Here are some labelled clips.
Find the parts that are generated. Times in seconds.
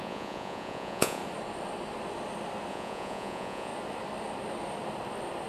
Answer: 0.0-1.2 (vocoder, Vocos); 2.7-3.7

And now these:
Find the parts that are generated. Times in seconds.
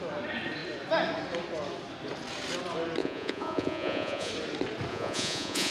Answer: 3.0-4.3 (vocoder, Vocos); 4.9-5.7